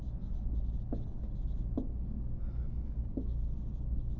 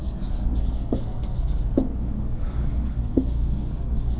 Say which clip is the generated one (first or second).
second